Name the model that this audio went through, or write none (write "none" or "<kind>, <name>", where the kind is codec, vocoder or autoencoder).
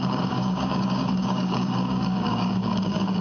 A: codec, DAC